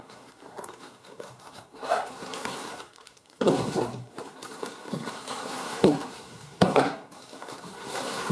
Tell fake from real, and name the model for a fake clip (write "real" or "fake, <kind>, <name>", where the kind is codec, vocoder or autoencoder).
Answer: fake, codec, SNAC